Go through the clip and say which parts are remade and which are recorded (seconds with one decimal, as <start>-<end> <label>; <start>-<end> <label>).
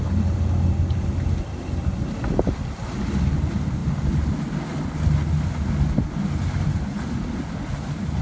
0.0-8.2 recorded